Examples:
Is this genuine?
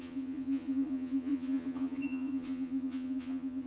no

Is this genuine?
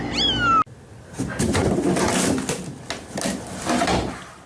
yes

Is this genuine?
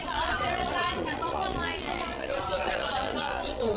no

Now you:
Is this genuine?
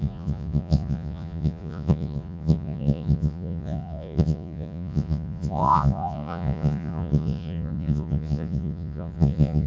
no